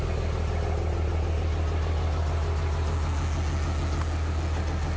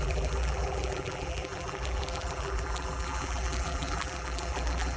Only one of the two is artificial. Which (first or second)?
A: second